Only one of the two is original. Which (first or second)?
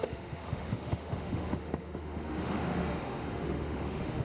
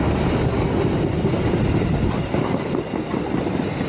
second